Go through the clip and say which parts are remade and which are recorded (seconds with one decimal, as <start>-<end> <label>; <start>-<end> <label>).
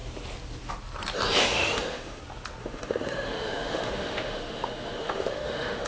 0.0-1.5 recorded; 1.5-2.2 remade; 2.2-2.6 recorded; 2.6-5.9 remade